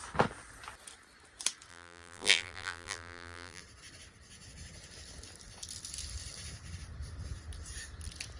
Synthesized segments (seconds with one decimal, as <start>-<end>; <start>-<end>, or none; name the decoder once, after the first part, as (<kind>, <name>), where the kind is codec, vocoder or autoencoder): 1.7-3.6 (vocoder, BigVGAN v2)